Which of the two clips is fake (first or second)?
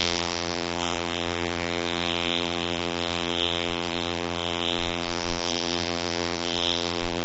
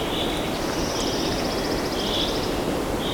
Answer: first